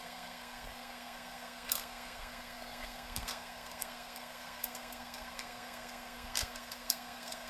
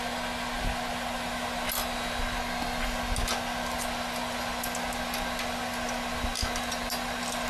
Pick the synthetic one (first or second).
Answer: first